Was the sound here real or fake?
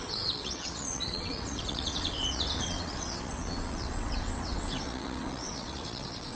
fake